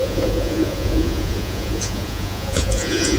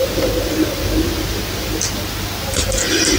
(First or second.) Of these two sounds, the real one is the second